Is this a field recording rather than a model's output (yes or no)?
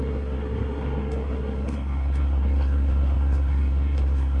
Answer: no